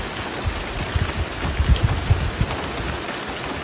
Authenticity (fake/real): real